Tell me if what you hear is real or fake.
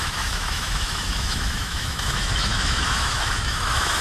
fake